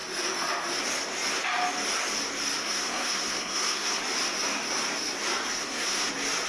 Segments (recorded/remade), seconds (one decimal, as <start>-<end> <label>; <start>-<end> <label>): 0.0-2.6 recorded; 2.6-4.0 remade; 4.0-5.6 recorded; 5.6-6.1 remade; 6.1-6.5 recorded